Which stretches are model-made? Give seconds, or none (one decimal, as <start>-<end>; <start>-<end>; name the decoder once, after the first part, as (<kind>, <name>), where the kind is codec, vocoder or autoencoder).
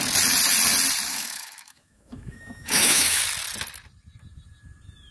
1.1-3.2 (autoencoder, DAC-VAE)